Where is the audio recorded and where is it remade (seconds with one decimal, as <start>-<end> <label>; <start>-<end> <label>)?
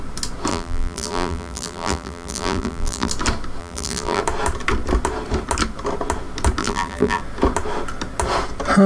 0.0-0.5 recorded; 0.5-3.1 remade; 3.1-3.6 recorded; 3.6-4.2 remade; 4.2-6.6 recorded; 6.6-7.2 remade; 7.2-8.9 recorded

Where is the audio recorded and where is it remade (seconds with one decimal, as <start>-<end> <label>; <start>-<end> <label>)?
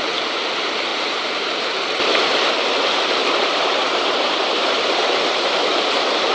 0.0-0.9 recorded; 0.9-1.8 remade; 1.8-3.2 recorded; 3.2-6.3 remade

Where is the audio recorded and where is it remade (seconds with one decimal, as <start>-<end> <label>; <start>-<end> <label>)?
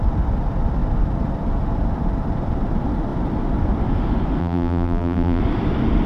0.0-4.4 recorded; 4.4-5.4 remade; 5.4-6.1 recorded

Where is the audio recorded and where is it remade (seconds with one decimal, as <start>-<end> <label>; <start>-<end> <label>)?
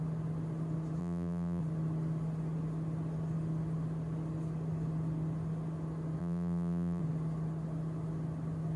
0.0-1.0 recorded; 1.0-1.6 remade; 1.6-6.2 recorded; 6.2-7.0 remade; 7.0-8.8 recorded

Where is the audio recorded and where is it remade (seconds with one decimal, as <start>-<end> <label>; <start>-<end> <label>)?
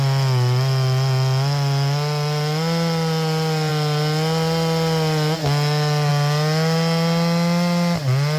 0.0-8.4 recorded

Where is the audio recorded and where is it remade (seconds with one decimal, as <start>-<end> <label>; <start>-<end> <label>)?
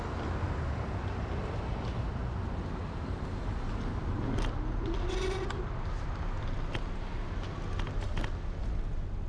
0.0-2.8 recorded; 2.8-3.4 remade; 3.4-9.3 recorded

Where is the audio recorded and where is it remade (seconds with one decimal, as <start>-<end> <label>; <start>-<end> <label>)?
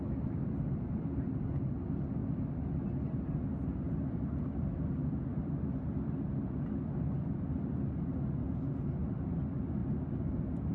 0.0-9.8 recorded; 9.8-10.7 remade